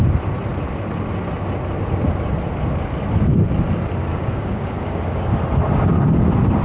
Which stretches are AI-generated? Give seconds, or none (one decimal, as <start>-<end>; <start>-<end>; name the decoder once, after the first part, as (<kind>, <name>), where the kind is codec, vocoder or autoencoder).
4.1-5.3 (codec, DAC)